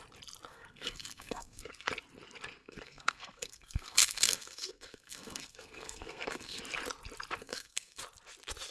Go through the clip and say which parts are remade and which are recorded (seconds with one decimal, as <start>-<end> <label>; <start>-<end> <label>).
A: 0.0-0.5 recorded; 0.5-1.9 remade; 1.9-2.6 recorded; 2.6-6.6 remade; 6.6-7.4 recorded; 7.4-8.0 remade; 8.0-8.7 recorded